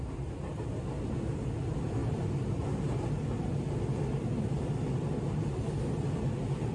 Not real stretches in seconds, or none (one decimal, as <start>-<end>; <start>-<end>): none